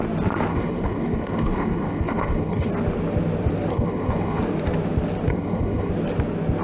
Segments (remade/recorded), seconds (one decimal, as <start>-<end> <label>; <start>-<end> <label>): 0.0-0.5 recorded; 0.5-2.7 remade; 2.7-3.7 recorded; 3.7-4.4 remade; 4.4-5.3 recorded; 5.3-5.9 remade; 5.9-6.6 recorded